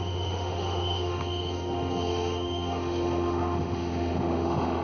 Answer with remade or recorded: remade